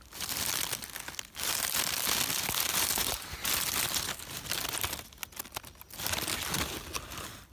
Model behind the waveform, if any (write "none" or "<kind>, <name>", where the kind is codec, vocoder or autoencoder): none